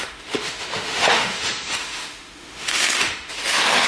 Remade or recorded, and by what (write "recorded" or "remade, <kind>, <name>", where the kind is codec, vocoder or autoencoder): remade, autoencoder, DAC-VAE